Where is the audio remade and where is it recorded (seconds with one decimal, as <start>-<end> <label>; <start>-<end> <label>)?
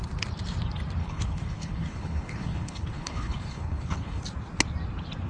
0.0-1.0 recorded; 1.0-4.2 remade; 4.2-5.3 recorded